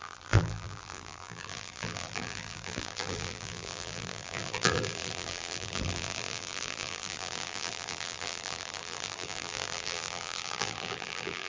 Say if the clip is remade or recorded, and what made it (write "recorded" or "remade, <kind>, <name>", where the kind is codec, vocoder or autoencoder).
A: remade, vocoder, BigVGAN v2